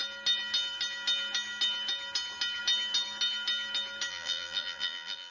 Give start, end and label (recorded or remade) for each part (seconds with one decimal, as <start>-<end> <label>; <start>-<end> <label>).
0.0-4.1 recorded; 4.1-5.3 remade